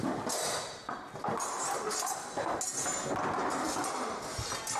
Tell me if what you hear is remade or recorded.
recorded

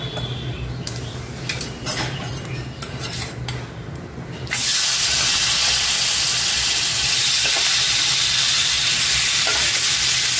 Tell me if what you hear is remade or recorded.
recorded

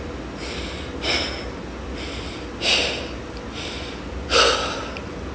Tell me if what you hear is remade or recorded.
recorded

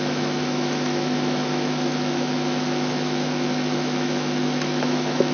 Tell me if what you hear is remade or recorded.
remade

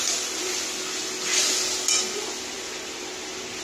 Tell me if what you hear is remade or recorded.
recorded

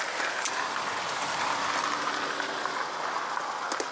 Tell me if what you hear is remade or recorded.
recorded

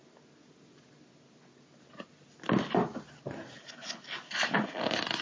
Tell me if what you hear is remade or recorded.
recorded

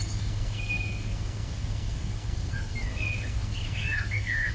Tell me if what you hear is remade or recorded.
remade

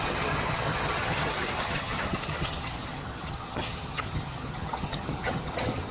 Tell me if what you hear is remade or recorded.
remade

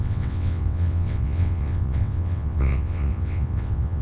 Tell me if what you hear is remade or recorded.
remade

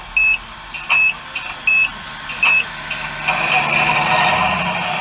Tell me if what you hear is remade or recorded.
recorded